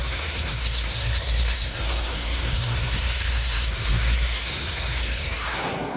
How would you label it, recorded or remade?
remade